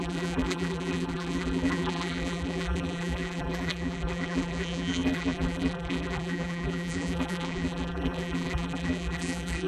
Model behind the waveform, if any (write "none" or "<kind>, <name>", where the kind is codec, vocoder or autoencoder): vocoder, BigVGAN v2